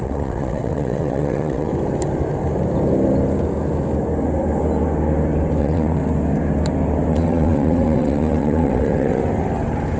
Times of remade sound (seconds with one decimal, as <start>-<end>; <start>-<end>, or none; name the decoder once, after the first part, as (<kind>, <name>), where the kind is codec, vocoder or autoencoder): 0.0-1.7 (vocoder, WaveNeXt); 5.6-6.0; 7.1-9.2